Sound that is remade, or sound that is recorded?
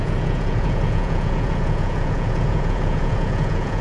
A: remade